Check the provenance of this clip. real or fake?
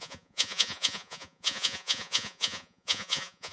fake